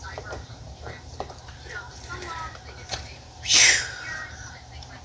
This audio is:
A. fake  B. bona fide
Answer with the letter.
A